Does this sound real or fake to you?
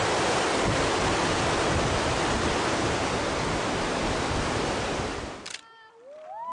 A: real